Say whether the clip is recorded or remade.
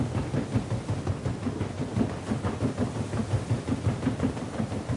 recorded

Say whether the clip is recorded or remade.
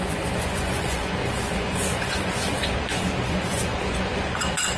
remade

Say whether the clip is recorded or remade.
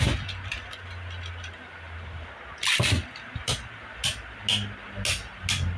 recorded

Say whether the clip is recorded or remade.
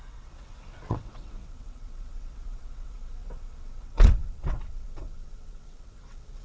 remade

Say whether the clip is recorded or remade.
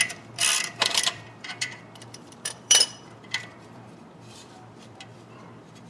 remade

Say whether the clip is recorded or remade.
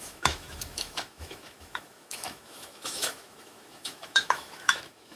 remade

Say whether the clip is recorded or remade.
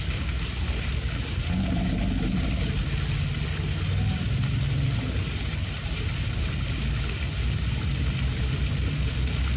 recorded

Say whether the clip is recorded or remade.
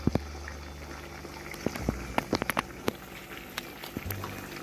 recorded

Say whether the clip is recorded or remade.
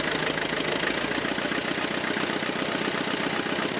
recorded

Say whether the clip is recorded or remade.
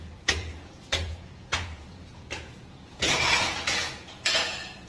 remade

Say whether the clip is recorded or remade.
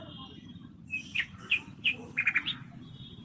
remade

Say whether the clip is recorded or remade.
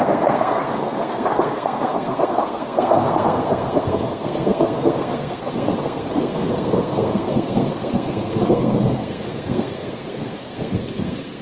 remade